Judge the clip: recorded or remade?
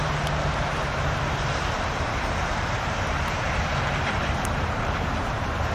remade